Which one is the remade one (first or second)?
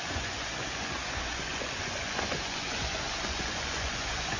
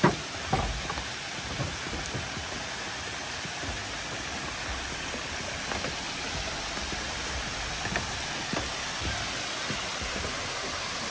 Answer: first